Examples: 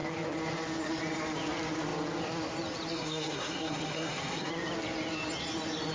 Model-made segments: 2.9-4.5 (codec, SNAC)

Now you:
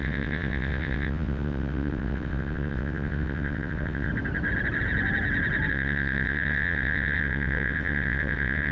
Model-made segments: 0.0-4.1 (vocoder, WaveNeXt); 5.7-8.7

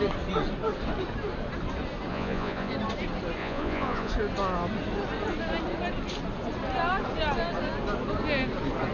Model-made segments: 2.1-2.7 (vocoder, Vocos); 3.4-4.1